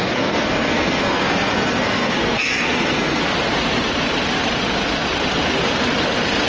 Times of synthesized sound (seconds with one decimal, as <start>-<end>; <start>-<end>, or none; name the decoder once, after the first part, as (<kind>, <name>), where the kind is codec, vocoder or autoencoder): 0.0-3.2 (codec, SNAC)